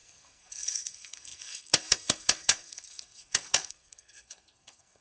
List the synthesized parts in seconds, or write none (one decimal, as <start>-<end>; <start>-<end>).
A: 0.0-5.0